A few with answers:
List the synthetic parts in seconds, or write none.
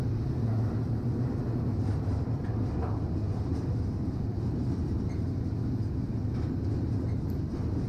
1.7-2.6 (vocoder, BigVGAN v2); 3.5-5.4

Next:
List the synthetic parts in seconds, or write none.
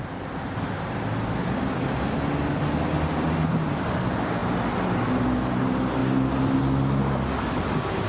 none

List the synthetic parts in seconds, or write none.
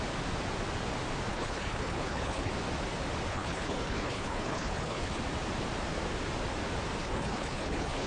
1.3-2.5 (codec, HILCodec); 3.3-5.2; 7.0-8.1